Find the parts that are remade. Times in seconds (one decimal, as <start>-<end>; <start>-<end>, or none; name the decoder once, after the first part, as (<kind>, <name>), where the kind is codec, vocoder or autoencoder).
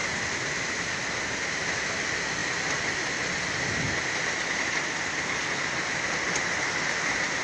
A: 0.0-0.9 (vocoder, BigVGAN v2)